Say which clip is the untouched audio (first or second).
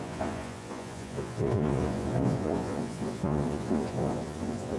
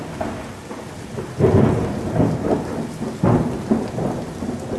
second